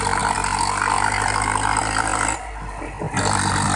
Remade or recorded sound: recorded